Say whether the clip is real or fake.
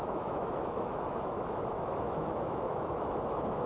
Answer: fake